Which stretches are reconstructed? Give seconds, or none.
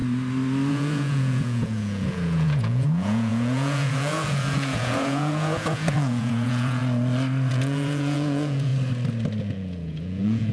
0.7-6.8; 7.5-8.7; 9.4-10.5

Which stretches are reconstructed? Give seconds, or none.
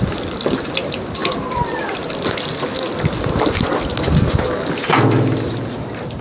none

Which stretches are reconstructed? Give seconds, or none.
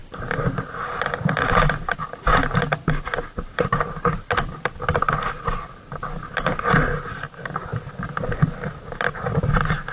none